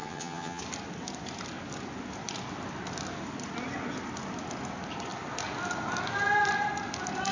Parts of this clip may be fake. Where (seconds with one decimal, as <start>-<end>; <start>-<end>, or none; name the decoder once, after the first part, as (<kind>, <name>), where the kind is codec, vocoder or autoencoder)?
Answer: 0.0-0.6 (vocoder, HiFi-GAN)